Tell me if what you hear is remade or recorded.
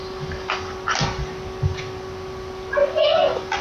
recorded